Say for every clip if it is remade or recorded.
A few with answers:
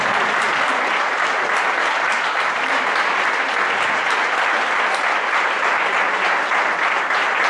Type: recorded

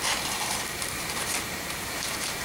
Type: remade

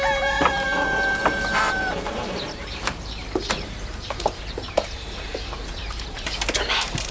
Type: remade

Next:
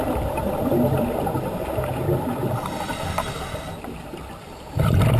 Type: recorded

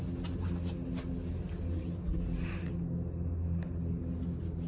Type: recorded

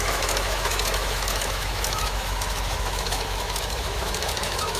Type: remade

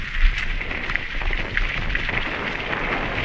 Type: recorded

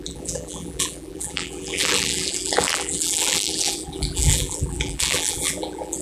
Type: remade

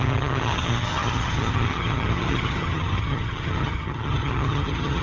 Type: remade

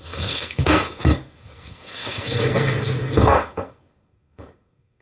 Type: remade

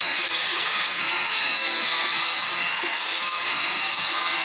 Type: remade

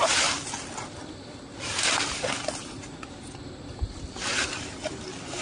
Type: recorded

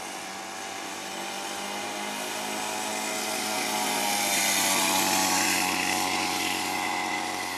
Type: recorded